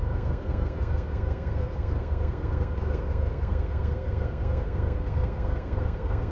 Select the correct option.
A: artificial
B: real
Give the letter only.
A